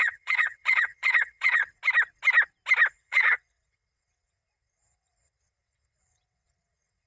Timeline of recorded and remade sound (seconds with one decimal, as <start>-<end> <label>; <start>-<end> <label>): 0.0-1.6 remade; 1.6-2.9 recorded; 2.9-7.1 remade